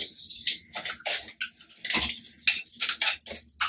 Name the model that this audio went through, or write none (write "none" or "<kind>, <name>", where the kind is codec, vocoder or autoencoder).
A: none